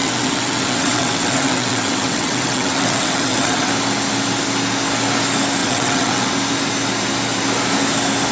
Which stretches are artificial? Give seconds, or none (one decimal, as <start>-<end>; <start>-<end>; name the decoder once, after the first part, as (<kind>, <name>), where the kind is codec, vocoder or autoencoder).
0.0-3.7 (vocoder, WaveNeXt); 5.6-6.3